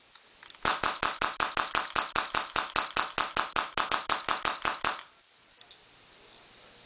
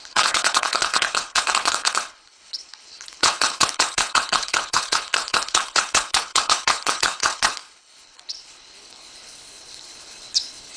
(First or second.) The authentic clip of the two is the first